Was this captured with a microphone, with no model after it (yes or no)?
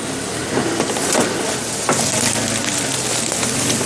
yes